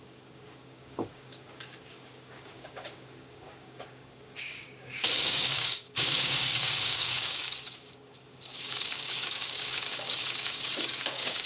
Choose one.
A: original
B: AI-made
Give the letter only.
B